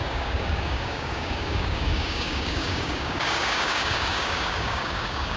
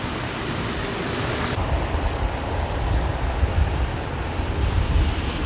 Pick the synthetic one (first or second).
first